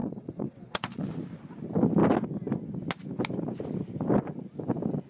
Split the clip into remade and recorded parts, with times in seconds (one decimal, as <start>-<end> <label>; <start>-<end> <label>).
0.0-1.1 remade; 1.1-5.1 recorded